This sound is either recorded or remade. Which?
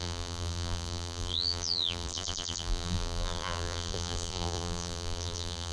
remade